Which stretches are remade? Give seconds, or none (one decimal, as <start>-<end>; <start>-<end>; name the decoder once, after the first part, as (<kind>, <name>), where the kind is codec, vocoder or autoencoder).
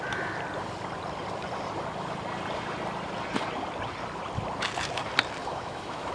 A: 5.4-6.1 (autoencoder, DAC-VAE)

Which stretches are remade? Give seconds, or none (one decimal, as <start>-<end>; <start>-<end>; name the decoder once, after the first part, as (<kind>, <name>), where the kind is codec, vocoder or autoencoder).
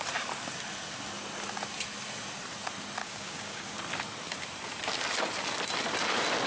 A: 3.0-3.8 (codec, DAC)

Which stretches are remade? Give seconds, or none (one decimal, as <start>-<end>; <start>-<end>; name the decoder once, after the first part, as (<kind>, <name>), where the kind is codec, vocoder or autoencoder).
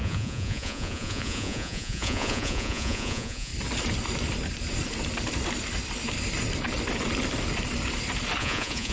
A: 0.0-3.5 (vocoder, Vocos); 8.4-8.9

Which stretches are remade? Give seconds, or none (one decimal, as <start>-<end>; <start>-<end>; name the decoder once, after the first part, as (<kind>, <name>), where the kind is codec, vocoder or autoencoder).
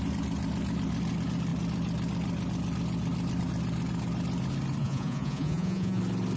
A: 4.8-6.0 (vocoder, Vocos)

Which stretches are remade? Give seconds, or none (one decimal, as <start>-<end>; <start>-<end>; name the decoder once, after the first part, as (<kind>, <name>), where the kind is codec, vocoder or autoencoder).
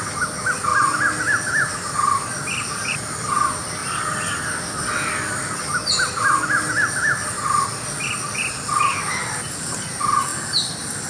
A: none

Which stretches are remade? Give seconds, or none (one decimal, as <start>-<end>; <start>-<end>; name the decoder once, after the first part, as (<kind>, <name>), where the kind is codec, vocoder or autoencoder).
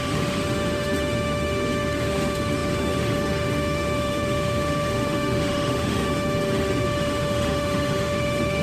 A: 0.0-8.6 (autoencoder, DAC-VAE)